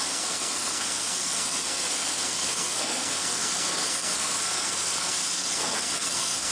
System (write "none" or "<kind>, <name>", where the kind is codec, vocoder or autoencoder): codec, SNAC